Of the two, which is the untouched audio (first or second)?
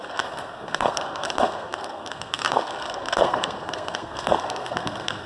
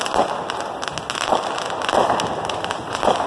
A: second